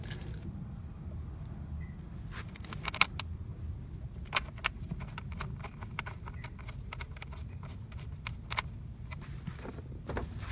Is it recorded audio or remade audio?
recorded